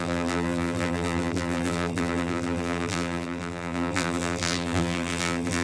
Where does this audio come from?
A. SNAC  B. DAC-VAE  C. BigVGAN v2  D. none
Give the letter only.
C